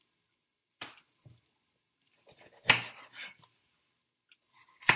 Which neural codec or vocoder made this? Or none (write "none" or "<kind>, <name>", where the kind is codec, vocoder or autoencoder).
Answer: none